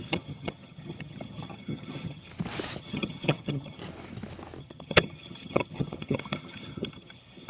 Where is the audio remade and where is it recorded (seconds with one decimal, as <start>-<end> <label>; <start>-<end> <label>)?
0.0-2.3 remade; 2.3-2.8 recorded; 2.8-3.8 remade; 3.8-4.6 recorded; 4.6-7.5 remade